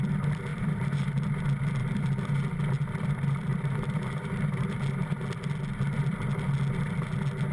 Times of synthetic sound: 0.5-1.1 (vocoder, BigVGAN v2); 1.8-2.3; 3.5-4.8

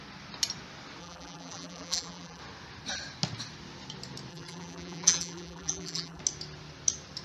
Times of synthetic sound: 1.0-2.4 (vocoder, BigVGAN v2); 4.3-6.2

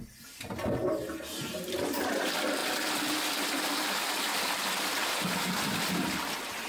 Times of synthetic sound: 2.6-3.2 (vocoder, BigVGAN v2)

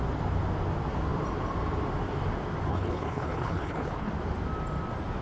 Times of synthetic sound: 2.7-4.1 (codec, HILCodec)

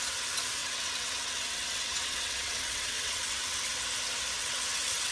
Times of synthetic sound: 0.6-3.7 (vocoder, WaveNeXt); 4.4-5.1

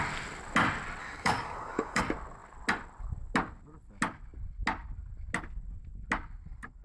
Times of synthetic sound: 1.0-2.0 (codec, DAC)

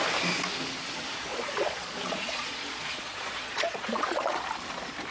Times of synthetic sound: 1.3-4.4 (vocoder, Vocos)

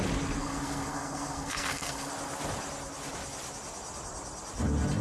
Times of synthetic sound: 0.4-2.1 (codec, SNAC)